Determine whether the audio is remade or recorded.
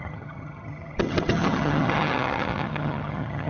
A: remade